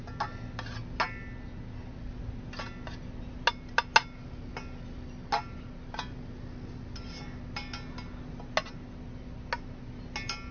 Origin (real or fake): real